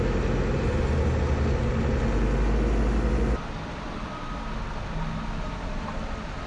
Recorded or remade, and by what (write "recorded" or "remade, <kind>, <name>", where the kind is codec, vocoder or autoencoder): recorded